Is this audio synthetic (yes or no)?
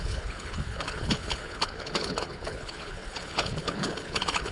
yes